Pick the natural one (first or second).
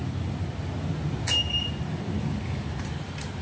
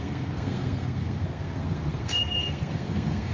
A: first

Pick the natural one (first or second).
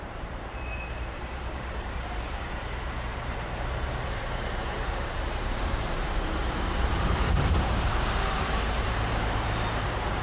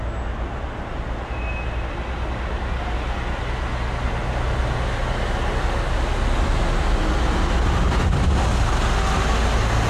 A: second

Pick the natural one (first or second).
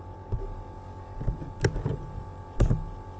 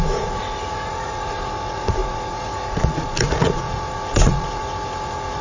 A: first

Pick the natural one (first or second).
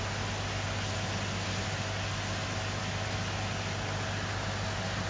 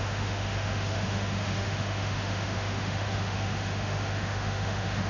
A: first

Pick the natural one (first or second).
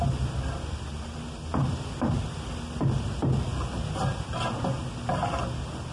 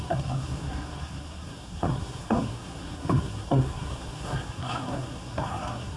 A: first